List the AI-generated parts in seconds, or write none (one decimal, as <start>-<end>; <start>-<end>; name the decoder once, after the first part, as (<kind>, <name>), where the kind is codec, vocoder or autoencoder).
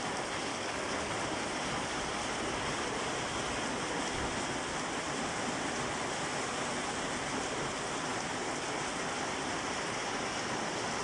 0.5-1.1 (codec, DAC)